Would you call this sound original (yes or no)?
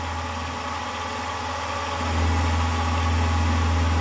yes